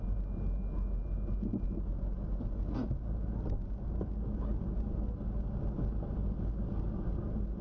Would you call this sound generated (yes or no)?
no